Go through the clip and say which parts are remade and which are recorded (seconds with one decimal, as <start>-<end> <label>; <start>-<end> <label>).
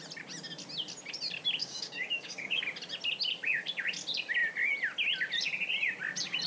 0.0-1.6 recorded; 1.6-2.6 remade; 2.6-6.5 recorded